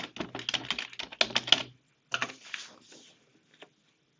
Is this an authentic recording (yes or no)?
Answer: yes